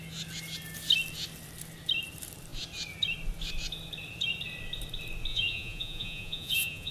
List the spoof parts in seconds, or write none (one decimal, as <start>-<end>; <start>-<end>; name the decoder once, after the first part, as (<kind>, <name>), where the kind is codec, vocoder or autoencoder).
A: 5.3-6.9 (vocoder, Vocos)